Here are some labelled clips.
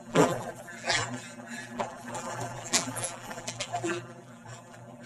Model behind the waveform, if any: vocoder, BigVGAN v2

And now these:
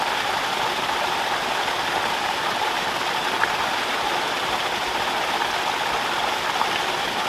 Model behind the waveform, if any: none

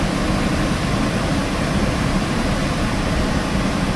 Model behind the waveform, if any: none